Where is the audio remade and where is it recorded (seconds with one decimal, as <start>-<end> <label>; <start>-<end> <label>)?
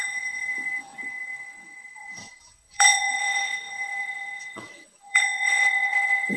0.0-6.4 remade